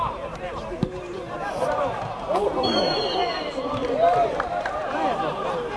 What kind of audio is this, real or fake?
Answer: fake